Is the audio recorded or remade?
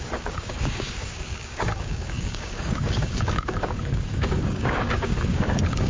remade